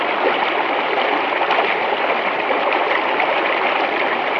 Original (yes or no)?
yes